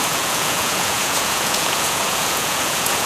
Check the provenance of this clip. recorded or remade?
remade